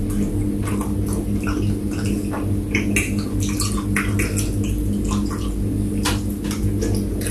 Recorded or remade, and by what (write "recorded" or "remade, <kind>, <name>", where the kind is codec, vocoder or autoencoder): recorded